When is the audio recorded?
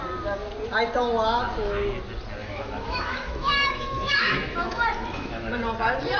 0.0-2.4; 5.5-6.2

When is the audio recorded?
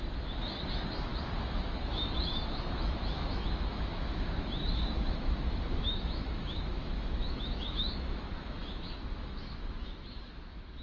1.1-1.9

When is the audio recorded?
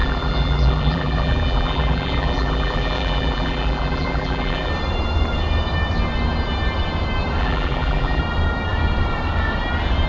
4.7-7.4; 8.2-10.1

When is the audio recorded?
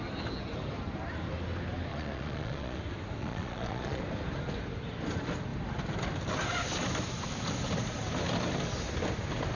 0.0-1.9; 2.8-3.2; 4.0-9.5